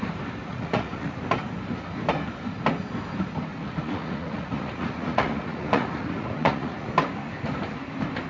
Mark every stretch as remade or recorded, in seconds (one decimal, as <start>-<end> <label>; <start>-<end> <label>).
0.0-0.5 recorded; 0.5-1.2 remade; 1.2-3.5 recorded; 3.5-6.9 remade; 6.9-8.3 recorded